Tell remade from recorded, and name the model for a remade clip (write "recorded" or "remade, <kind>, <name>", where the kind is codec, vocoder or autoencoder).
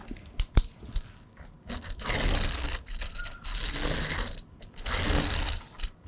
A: recorded